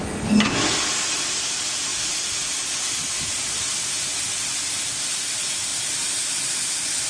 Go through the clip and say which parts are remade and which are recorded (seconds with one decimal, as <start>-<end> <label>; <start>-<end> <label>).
0.0-7.1 recorded